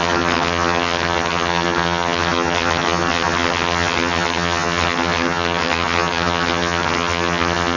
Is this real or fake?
fake